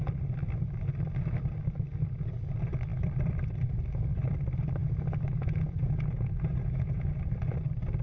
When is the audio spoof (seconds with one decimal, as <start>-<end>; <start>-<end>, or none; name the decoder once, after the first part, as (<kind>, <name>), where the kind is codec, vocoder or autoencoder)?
4.8-7.2 (vocoder, Vocos)